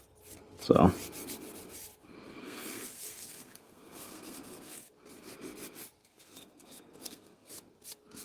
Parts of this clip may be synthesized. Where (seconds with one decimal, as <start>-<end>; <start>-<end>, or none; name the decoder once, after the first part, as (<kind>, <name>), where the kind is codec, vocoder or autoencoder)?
2.4-4.9 (codec, SNAC); 6.0-7.5